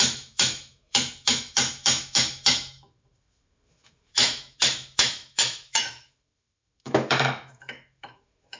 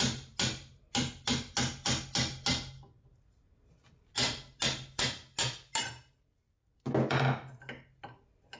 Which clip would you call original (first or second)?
second